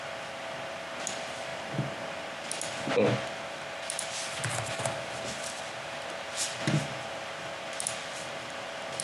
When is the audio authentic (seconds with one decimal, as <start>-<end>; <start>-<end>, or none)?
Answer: 0.0-9.0